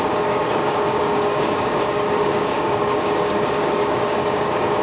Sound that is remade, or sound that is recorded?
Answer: remade